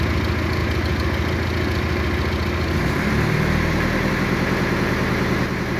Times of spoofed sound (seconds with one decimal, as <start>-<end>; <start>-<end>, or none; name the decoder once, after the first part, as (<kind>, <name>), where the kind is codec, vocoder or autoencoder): none